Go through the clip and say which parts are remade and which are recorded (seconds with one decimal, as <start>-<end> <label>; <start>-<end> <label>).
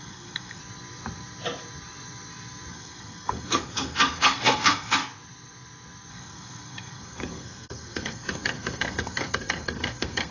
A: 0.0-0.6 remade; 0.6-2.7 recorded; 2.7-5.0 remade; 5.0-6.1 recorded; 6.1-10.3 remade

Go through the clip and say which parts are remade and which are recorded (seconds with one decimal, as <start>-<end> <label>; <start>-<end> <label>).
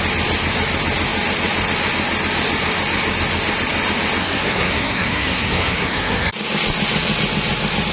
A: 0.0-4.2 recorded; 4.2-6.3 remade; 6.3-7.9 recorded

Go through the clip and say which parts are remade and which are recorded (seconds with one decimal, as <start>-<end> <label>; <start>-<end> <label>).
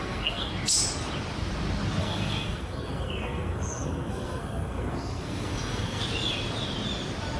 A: 0.0-0.5 remade; 0.5-2.0 recorded; 2.0-6.0 remade; 6.0-7.4 recorded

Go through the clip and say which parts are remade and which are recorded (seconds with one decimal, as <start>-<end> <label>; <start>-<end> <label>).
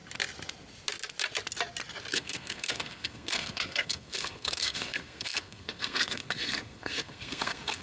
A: 0.0-2.1 recorded; 2.1-7.8 remade